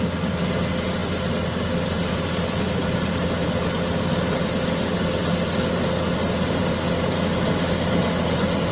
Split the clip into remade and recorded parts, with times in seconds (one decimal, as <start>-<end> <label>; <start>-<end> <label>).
0.0-8.7 recorded

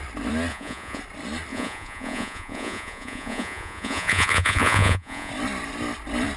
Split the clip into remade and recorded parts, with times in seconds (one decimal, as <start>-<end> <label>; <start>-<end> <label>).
0.0-0.5 recorded; 0.5-1.0 remade; 1.0-1.5 recorded; 1.5-5.3 remade; 5.3-6.4 recorded

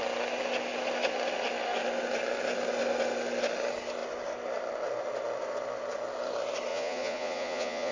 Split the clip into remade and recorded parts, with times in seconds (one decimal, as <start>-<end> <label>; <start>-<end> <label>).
0.0-6.7 recorded; 6.7-7.9 remade

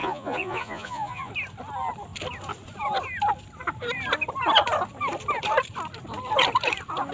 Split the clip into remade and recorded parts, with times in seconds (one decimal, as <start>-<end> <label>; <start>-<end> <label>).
0.0-1.3 remade; 1.3-7.1 recorded